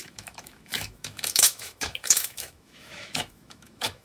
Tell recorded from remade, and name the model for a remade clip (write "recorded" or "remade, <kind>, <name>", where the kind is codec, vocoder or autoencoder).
remade, autoencoder, DAC-VAE